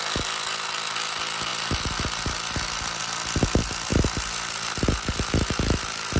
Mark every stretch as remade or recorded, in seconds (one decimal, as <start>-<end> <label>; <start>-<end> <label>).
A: 0.0-6.2 recorded